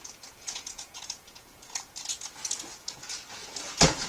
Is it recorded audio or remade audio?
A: remade